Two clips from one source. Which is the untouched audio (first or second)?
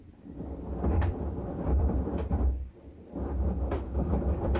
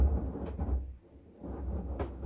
second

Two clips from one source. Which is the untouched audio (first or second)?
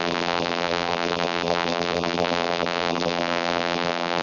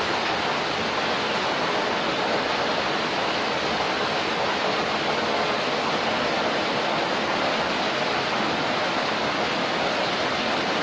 second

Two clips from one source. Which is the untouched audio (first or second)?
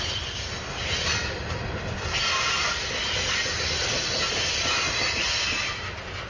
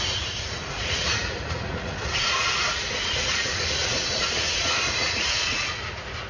first